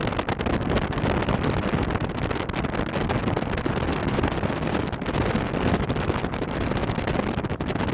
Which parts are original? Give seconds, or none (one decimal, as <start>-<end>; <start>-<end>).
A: 0.0-1.2; 2.1-3.2; 7.5-7.9